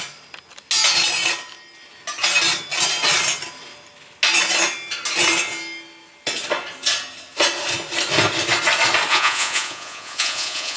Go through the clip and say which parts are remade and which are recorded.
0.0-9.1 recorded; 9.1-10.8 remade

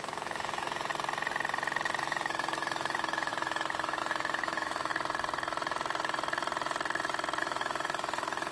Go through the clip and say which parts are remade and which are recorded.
0.0-0.9 remade; 0.9-2.0 recorded; 2.0-4.9 remade; 4.9-7.4 recorded; 7.4-8.5 remade

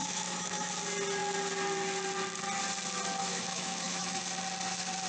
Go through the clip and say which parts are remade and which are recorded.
0.0-0.7 remade; 0.7-3.2 recorded; 3.2-4.2 remade; 4.2-5.1 recorded

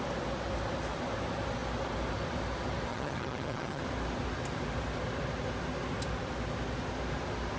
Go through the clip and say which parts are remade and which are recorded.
0.0-2.9 recorded; 2.9-3.8 remade; 3.8-7.6 recorded

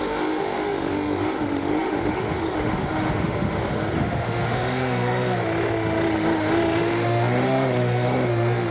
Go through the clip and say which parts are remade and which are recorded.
0.0-8.7 remade

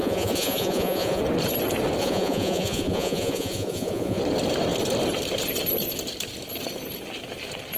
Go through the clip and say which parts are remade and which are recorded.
0.0-1.2 remade; 1.2-2.0 recorded; 2.0-4.2 remade; 4.2-7.8 recorded

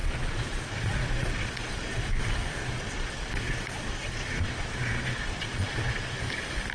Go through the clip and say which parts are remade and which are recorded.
0.0-2.1 remade; 2.1-2.6 recorded; 2.6-6.2 remade; 6.2-6.7 recorded